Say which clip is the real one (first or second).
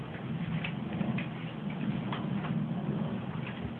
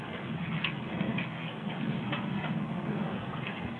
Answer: first